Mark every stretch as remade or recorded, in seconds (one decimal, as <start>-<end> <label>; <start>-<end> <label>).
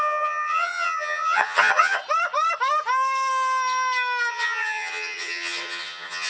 0.0-2.0 remade; 2.0-4.3 recorded; 4.3-6.3 remade